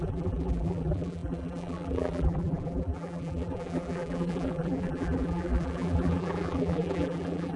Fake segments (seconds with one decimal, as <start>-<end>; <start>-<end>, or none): 0.0-7.6